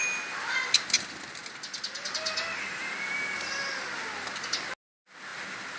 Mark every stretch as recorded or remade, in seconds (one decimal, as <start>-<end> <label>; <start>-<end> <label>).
0.0-5.8 recorded